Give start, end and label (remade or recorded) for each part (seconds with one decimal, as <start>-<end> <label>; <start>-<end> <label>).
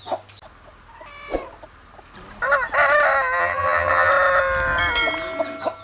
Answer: 0.0-3.4 recorded; 3.4-4.1 remade; 4.1-5.8 recorded